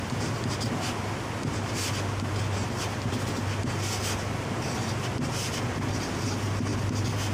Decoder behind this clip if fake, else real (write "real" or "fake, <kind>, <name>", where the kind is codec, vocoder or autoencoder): real